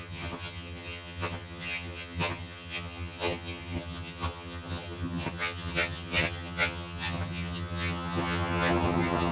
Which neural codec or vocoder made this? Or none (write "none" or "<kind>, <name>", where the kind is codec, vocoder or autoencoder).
vocoder, HiFi-GAN